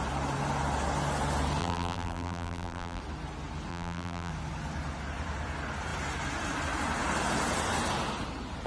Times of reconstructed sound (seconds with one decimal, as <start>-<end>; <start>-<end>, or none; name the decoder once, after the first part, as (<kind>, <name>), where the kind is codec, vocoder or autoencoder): 1.6-3.0 (vocoder, BigVGAN v2); 3.7-4.3